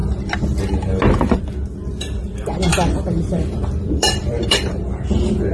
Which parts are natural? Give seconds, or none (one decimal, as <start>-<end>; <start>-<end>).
0.0-2.7; 4.6-5.5